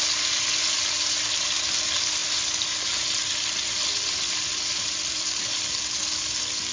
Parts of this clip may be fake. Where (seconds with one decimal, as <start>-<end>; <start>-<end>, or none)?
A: 2.2-5.8